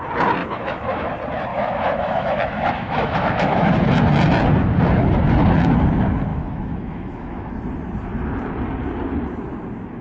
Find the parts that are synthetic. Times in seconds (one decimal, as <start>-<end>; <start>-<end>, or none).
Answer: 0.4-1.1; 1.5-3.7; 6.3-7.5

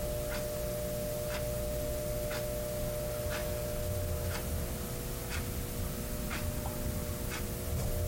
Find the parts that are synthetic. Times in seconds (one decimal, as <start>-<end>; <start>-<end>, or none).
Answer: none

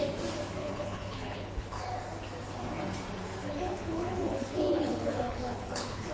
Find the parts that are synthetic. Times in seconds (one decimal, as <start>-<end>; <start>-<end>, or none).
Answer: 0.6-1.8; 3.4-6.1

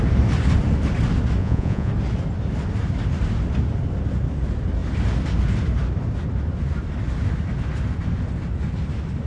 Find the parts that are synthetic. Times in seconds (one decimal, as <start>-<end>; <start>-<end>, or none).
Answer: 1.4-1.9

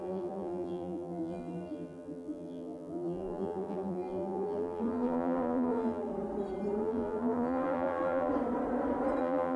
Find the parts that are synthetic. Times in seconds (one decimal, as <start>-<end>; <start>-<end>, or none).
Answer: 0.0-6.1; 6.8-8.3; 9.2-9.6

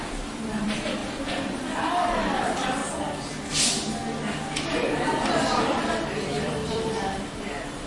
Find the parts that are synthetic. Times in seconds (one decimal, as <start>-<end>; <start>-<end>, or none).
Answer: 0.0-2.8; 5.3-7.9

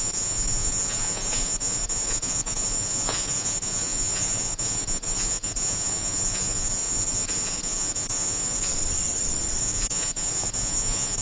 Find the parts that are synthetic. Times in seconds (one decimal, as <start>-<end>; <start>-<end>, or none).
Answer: 0.0-8.7; 9.6-11.2